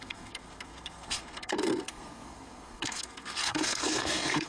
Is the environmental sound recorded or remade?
remade